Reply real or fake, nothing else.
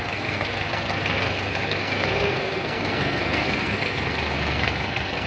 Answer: fake